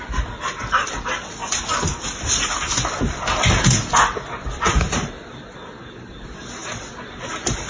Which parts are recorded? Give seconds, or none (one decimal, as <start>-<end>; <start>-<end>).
0.0-7.7